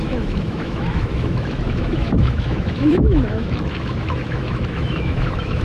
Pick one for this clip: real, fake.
fake